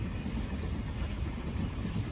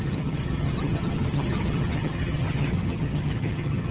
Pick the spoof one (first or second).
second